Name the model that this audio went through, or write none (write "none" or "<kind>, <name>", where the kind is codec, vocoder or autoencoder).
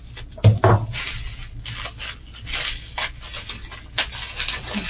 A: none